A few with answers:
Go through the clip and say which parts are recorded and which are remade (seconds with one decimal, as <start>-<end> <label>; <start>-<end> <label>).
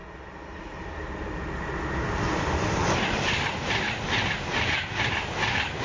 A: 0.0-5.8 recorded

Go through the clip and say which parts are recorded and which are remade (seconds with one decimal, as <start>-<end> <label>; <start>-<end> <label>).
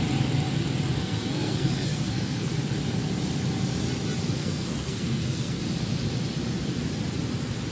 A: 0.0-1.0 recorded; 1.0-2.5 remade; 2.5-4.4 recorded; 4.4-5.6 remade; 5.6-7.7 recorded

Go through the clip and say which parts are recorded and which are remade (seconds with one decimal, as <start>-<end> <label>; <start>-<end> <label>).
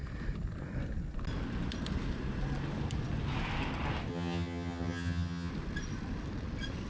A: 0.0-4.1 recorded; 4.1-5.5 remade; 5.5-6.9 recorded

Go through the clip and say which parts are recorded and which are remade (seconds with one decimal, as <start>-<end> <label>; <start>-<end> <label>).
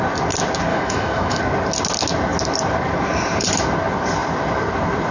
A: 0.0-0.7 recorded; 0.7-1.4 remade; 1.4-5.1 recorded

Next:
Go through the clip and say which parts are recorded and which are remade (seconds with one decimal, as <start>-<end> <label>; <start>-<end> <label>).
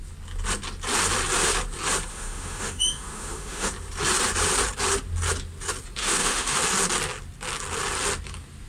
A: 0.0-2.1 recorded; 2.1-3.7 remade; 3.7-6.0 recorded; 6.0-6.6 remade; 6.6-8.7 recorded